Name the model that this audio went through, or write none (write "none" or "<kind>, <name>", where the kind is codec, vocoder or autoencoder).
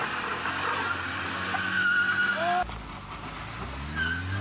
none